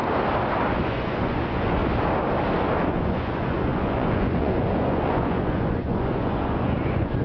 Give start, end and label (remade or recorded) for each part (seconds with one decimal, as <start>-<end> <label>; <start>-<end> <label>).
0.0-0.7 recorded; 0.7-1.8 remade; 1.8-2.9 recorded; 2.9-7.2 remade